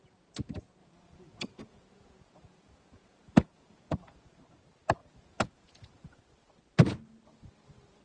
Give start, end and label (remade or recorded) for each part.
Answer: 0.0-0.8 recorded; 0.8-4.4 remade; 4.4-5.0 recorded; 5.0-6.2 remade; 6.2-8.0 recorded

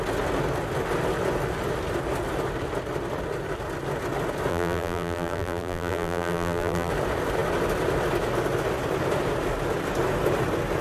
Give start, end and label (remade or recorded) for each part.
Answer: 0.0-4.5 recorded; 4.5-6.9 remade; 6.9-10.8 recorded

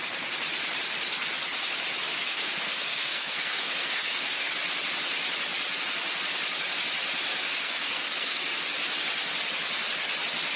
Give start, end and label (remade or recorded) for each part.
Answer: 0.0-2.1 recorded; 2.1-4.5 remade; 4.5-7.3 recorded; 7.3-8.6 remade; 8.6-10.6 recorded

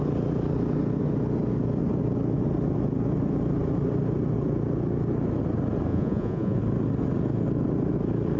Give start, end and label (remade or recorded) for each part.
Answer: 0.0-5.9 recorded; 5.9-6.6 remade; 6.6-8.4 recorded

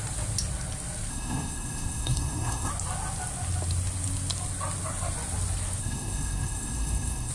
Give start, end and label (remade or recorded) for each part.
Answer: 0.0-1.1 recorded; 1.1-2.7 remade; 2.7-5.8 recorded; 5.8-7.3 remade

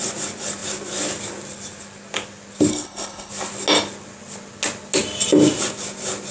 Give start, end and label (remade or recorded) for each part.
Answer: 0.0-2.7 recorded; 2.7-3.3 remade; 3.3-6.3 recorded

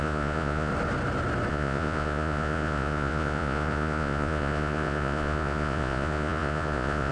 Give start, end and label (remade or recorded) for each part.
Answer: 0.0-0.7 remade; 0.7-1.5 recorded; 1.5-7.1 remade